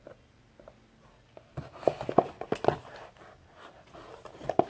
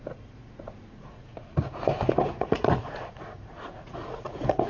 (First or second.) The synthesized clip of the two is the second